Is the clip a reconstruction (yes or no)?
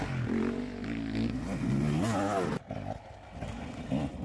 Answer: no